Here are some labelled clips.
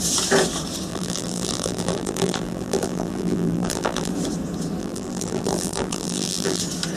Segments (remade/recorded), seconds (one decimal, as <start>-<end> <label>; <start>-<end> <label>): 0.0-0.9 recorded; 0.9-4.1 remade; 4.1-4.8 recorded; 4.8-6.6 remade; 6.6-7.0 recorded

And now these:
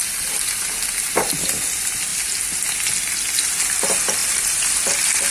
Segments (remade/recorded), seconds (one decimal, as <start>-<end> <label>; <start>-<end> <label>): 0.0-4.2 recorded; 4.2-4.7 remade; 4.7-5.3 recorded

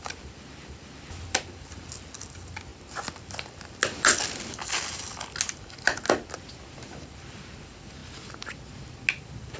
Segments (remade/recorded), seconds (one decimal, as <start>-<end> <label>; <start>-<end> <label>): 0.0-2.7 remade; 2.7-6.7 recorded; 6.7-8.0 remade; 8.0-9.1 recorded; 9.1-9.6 remade

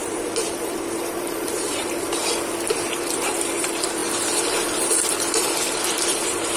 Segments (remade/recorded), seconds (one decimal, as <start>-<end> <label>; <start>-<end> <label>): 0.0-2.2 remade; 2.2-2.7 recorded; 2.7-6.6 remade